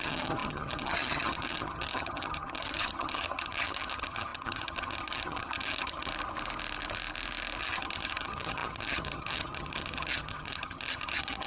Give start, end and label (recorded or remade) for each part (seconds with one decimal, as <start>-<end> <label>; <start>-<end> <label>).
0.0-6.1 remade; 6.1-7.6 recorded; 7.6-11.5 remade